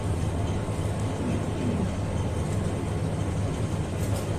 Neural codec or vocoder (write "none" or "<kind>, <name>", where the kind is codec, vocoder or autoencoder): none